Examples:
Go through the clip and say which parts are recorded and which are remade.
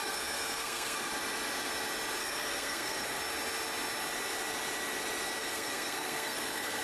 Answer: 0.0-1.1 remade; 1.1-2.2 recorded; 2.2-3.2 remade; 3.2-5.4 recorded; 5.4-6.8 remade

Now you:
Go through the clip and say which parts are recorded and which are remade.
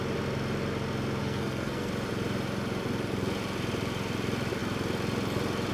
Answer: 0.0-1.2 recorded; 1.2-1.9 remade; 1.9-5.7 recorded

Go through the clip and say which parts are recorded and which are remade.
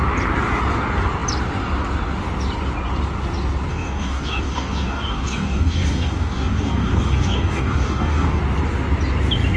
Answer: 0.0-3.7 recorded; 3.7-8.4 remade; 8.4-9.6 recorded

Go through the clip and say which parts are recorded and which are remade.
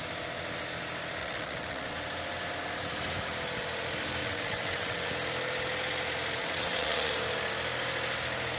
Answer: 0.0-1.2 recorded; 1.2-1.9 remade; 1.9-4.2 recorded; 4.2-5.1 remade; 5.1-6.4 recorded; 6.4-7.1 remade; 7.1-8.6 recorded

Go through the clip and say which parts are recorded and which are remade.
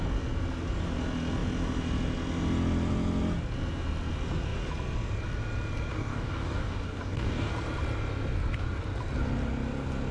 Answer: 0.0-5.9 recorded; 5.9-7.5 remade; 7.5-10.1 recorded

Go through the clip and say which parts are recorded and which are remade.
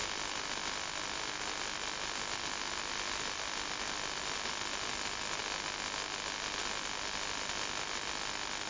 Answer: 0.0-8.7 recorded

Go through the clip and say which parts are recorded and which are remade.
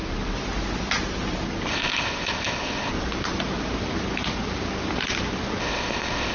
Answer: 0.0-1.7 recorded; 1.7-2.9 remade; 2.9-5.6 recorded; 5.6-6.3 remade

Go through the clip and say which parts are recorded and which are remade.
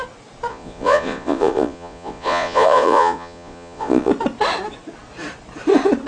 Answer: 0.0-0.5 recorded; 0.5-4.1 remade; 4.1-6.1 recorded